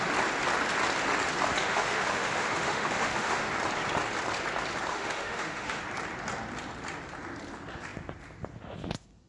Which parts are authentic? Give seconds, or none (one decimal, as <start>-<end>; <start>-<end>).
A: 0.0-1.6; 3.5-4.9; 5.8-9.3